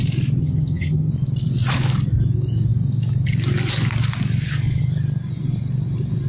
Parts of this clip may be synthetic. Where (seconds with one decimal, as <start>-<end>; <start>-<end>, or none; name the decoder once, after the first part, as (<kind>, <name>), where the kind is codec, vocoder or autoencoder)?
0.4-1.1 (vocoder, HiFi-GAN)